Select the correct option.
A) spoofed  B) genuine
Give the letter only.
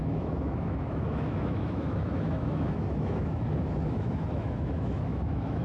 A